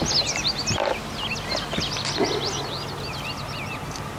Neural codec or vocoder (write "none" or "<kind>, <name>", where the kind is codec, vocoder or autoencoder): none